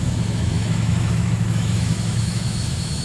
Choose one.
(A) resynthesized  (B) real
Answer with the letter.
A